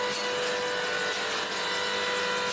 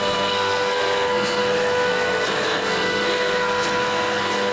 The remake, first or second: second